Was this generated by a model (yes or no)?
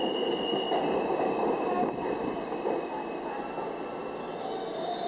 no